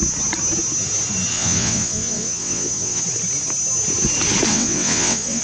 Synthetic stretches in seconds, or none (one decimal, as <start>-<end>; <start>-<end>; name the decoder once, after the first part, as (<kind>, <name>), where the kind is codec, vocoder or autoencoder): 1.3-3.0 (vocoder, WaveNeXt); 4.5-5.4